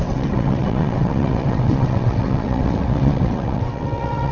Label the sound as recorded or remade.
remade